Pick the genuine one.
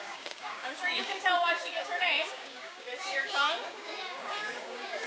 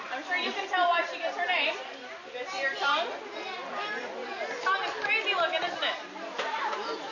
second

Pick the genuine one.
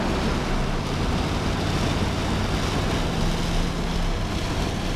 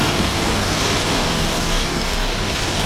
first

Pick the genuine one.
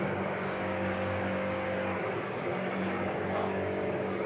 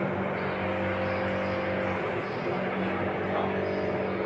second